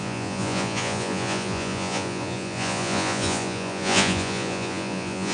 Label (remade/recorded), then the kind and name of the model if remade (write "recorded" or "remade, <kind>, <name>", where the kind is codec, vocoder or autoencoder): remade, vocoder, Vocos